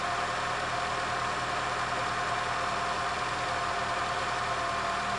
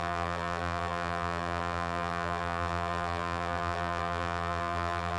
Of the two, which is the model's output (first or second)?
second